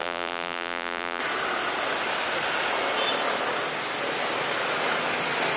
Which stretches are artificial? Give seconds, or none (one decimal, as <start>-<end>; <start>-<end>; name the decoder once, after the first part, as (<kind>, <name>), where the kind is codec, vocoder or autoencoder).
0.0-1.2 (vocoder, BigVGAN v2)